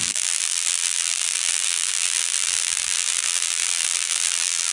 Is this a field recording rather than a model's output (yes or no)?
no